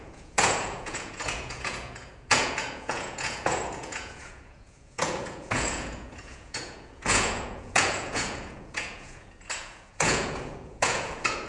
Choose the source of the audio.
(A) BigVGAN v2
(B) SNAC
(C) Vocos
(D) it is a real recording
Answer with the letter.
C